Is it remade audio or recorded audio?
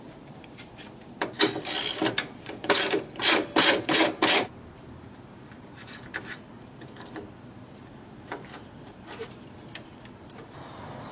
remade